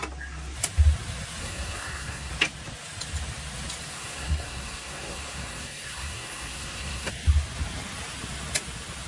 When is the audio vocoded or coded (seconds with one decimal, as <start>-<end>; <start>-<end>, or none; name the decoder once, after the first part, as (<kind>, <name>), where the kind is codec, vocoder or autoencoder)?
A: 1.4-2.3 (codec, SNAC); 3.9-7.1